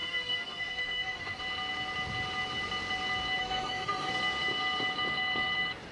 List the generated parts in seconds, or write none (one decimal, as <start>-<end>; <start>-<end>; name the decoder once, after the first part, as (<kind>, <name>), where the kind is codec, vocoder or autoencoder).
0.0-1.4 (autoencoder, DAC-VAE); 3.4-4.1